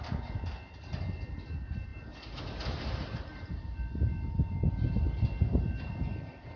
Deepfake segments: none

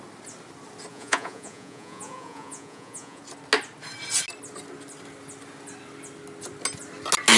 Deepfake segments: 0.9-3.2 (vocoder, Vocos)

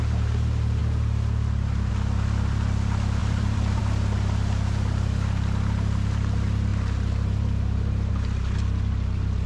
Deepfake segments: 3.2-3.8 (vocoder, BigVGAN v2); 6.7-8.1